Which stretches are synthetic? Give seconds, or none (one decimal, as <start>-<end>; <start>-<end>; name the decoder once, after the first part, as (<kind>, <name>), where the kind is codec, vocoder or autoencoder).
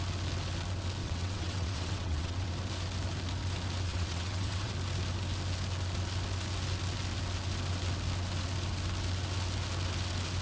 1.0-2.5 (vocoder, WaveNeXt); 3.9-4.7